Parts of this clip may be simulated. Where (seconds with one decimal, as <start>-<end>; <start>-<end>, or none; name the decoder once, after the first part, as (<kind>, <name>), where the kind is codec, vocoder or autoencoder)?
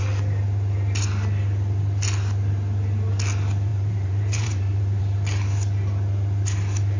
3.7-5.0 (vocoder, BigVGAN v2)